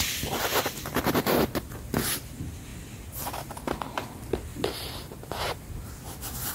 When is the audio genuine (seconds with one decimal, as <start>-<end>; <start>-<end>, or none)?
0.0-0.5; 1.3-4.5; 5.9-6.5